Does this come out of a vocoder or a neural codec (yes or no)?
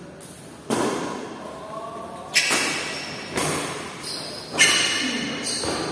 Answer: no